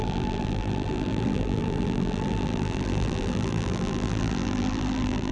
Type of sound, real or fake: fake